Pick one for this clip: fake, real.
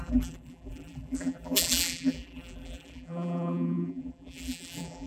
fake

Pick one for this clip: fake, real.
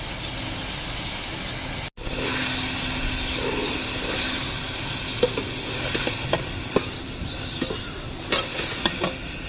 real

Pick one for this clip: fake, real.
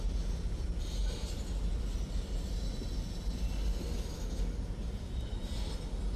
real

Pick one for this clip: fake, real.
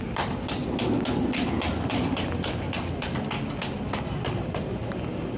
real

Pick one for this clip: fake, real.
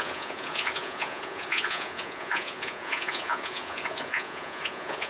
fake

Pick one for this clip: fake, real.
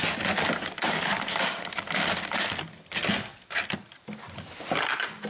real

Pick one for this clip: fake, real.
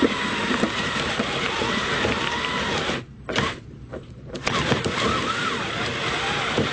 fake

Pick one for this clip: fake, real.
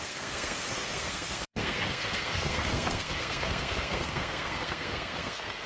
fake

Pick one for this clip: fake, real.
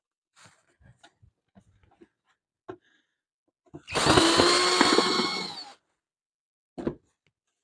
real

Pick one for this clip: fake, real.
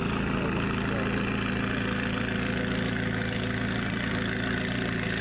real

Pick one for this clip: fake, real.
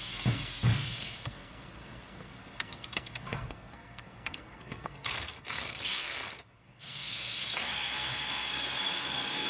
fake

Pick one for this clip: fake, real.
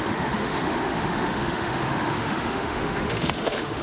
fake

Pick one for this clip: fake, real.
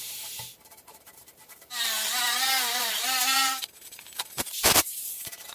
fake